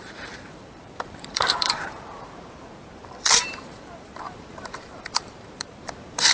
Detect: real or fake fake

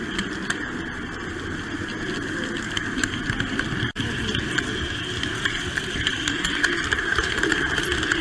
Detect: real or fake real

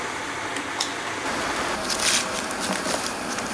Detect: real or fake real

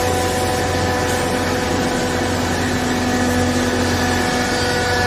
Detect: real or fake real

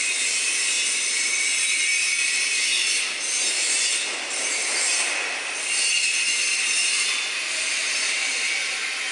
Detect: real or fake fake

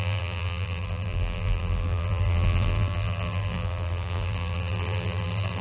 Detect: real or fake fake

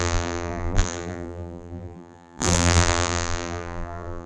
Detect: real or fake fake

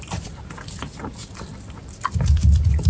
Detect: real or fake fake